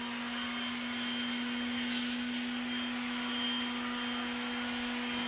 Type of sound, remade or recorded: recorded